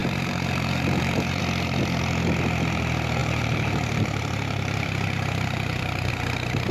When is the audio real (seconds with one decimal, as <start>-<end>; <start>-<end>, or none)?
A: 1.4-3.2; 6.1-6.7